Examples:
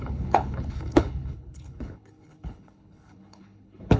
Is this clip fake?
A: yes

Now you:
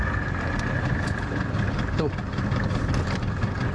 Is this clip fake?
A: no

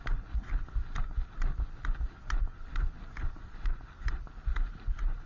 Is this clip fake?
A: no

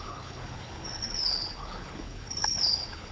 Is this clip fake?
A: yes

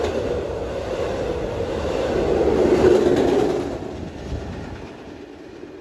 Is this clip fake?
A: no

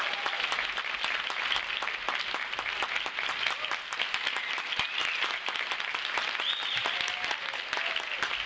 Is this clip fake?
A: no